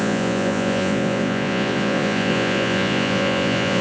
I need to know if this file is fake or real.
fake